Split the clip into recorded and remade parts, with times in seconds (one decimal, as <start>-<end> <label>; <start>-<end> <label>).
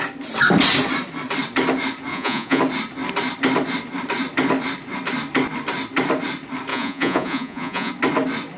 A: 0.0-2.1 recorded; 2.1-2.6 remade; 2.6-6.7 recorded; 6.7-7.9 remade; 7.9-8.6 recorded